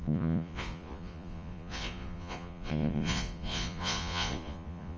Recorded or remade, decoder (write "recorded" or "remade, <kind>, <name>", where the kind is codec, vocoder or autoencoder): remade, vocoder, Vocos